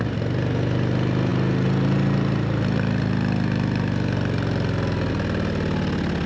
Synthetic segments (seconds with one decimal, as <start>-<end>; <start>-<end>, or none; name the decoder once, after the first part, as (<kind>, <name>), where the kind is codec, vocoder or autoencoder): none

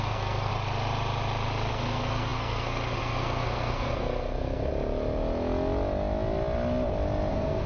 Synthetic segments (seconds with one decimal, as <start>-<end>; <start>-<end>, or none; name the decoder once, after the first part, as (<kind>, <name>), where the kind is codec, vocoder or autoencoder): 0.0-0.5 (codec, SNAC); 1.7-4.7; 7.3-7.7